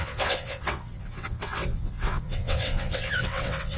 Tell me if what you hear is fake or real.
fake